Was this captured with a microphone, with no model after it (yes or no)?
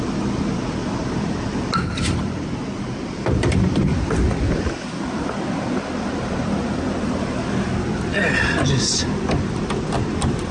no